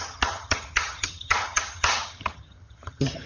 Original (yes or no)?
no